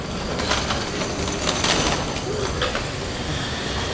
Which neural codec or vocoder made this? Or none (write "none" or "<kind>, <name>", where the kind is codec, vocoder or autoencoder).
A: none